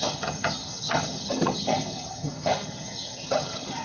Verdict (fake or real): fake